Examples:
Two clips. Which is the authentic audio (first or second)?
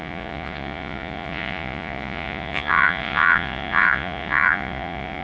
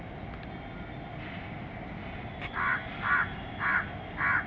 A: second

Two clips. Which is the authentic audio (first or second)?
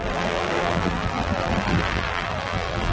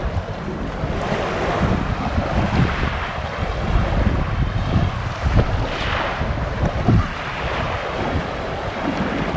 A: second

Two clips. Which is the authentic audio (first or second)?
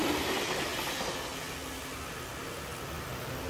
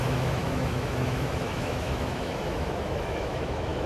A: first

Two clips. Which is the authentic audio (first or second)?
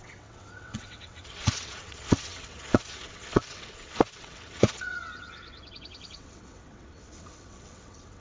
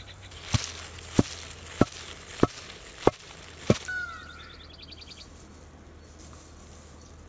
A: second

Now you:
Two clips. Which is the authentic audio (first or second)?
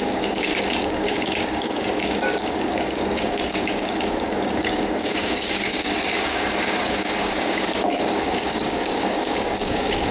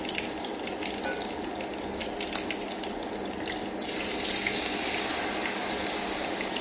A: second